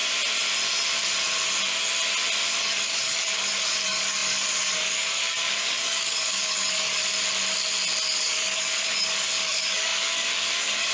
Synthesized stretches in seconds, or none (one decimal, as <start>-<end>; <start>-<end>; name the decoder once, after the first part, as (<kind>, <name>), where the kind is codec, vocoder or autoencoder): 2.6-7.0 (codec, DAC); 8.1-10.9